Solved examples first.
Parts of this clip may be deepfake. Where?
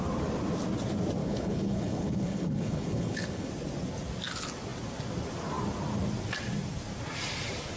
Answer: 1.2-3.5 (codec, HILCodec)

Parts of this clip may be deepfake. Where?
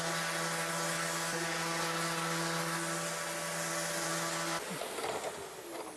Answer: none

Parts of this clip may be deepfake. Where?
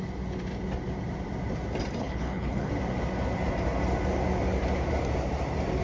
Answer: 2.0-2.7 (codec, HILCodec)